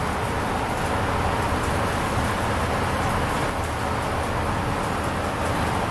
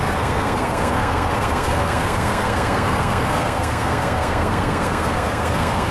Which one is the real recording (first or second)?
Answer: first